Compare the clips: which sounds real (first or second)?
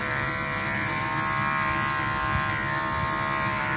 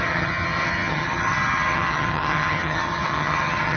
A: first